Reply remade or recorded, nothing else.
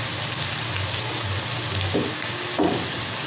recorded